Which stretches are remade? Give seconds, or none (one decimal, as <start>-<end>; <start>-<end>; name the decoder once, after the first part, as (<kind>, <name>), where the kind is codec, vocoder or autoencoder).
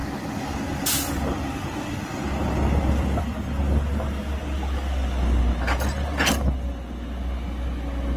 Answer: none